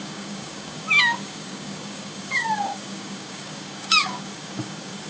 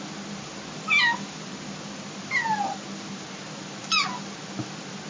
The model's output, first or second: first